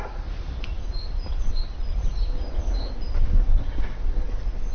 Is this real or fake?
real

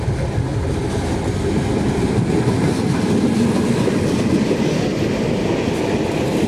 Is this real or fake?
real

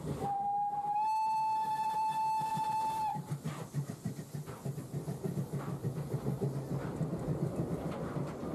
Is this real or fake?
real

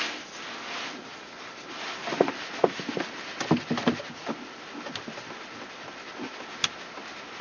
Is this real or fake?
real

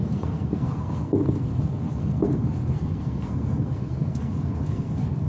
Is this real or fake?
fake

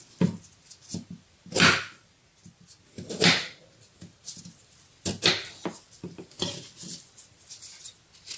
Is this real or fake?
real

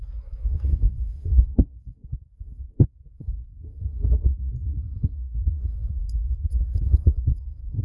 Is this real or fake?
fake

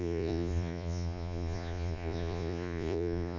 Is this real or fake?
fake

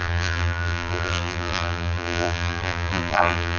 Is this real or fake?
fake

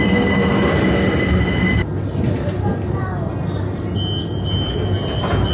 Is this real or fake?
real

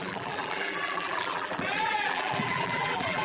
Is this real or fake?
fake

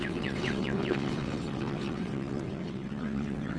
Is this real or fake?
fake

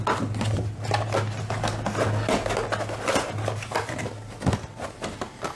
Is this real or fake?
real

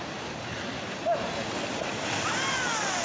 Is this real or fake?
real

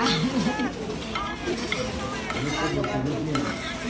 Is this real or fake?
real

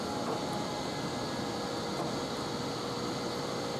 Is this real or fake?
real